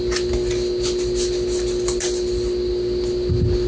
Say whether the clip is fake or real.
real